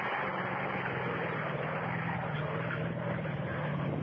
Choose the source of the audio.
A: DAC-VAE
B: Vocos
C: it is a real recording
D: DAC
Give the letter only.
C